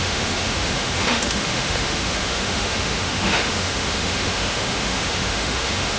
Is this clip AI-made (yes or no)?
yes